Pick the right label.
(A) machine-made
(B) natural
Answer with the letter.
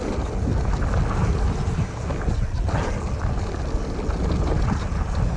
B